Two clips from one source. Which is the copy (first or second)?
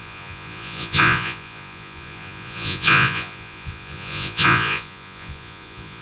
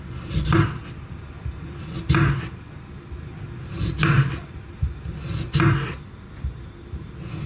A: first